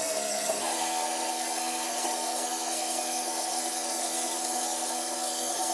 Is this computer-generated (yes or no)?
yes